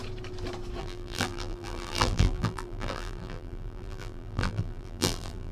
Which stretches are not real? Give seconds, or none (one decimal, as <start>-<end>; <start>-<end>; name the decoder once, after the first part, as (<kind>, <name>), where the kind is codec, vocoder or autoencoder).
0.8-5.5 (vocoder, BigVGAN v2)